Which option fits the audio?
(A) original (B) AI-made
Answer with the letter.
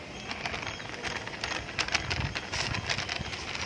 A